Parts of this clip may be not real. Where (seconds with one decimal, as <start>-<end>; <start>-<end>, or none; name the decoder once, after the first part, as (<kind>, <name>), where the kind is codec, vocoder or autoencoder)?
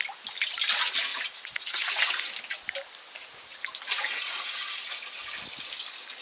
1.1-2.1 (vocoder, Vocos); 3.5-5.2